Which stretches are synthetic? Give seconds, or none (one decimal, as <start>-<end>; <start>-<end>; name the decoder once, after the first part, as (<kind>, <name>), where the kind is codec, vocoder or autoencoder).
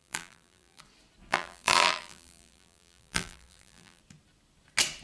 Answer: 0.0-0.8 (vocoder, BigVGAN v2); 1.3-4.0